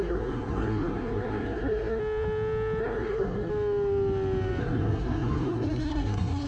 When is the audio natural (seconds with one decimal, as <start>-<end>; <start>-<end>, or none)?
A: 2.0-2.8; 3.5-4.6